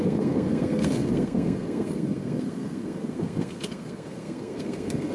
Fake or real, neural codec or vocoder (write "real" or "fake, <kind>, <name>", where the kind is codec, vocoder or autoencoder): fake, codec, SNAC